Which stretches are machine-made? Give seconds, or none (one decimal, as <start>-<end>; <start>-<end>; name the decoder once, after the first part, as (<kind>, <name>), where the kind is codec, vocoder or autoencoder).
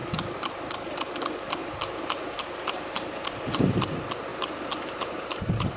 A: 0.0-1.1 (vocoder, BigVGAN v2); 1.6-3.7; 4.3-5.8